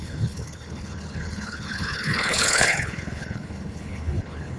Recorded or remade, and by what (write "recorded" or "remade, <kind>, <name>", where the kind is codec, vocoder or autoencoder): remade, codec, HILCodec